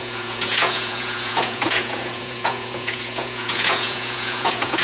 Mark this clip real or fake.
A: fake